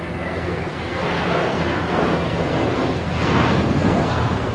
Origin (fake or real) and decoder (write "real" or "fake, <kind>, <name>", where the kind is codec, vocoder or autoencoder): fake, codec, SNAC